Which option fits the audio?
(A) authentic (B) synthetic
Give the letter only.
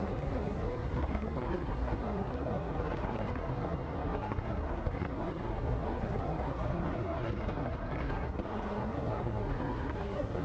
B